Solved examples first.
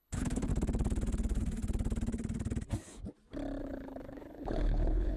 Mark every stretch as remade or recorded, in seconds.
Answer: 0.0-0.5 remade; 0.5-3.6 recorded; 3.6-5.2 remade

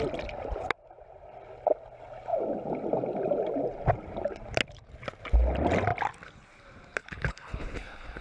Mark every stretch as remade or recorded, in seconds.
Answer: 0.0-7.0 recorded; 7.0-8.2 remade

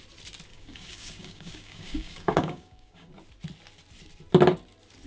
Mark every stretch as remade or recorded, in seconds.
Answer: 0.0-0.5 recorded; 0.5-3.1 remade; 3.1-5.1 recorded

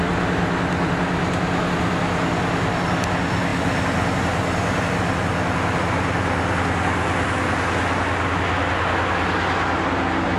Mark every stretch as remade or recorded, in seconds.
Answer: 0.0-10.4 recorded

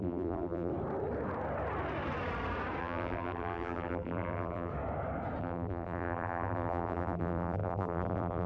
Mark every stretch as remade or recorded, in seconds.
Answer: 0.0-0.7 remade; 0.7-2.8 recorded; 2.8-4.7 remade; 4.7-5.4 recorded; 5.4-8.5 remade